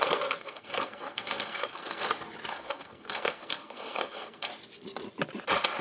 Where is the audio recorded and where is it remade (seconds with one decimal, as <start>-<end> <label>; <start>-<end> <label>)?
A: 0.0-2.0 remade; 2.0-2.5 recorded; 2.5-4.5 remade; 4.5-5.8 recorded